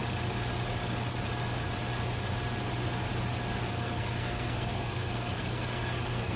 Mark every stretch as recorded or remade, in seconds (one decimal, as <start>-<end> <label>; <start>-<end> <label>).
0.0-3.7 recorded; 3.7-6.4 remade